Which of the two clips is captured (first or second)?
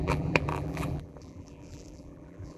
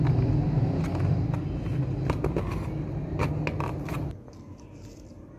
second